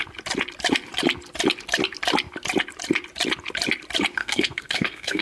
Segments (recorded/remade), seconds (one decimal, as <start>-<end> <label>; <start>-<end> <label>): 0.0-4.2 recorded; 4.2-5.2 remade